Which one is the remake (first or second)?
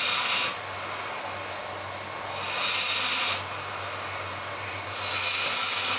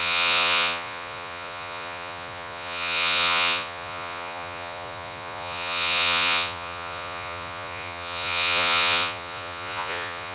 second